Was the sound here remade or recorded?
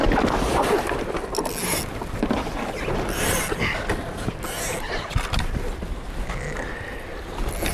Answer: recorded